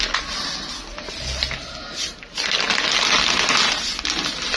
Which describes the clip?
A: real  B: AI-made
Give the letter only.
A